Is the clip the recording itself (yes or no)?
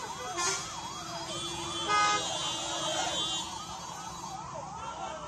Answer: yes